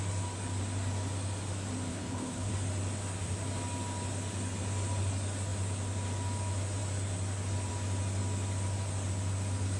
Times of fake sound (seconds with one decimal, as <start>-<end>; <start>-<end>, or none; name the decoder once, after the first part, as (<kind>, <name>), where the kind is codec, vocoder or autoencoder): 1.9-2.5 (codec, HILCodec)